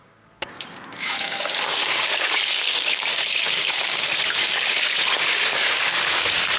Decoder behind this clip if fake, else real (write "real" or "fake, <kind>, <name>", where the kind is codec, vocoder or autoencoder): fake, codec, DAC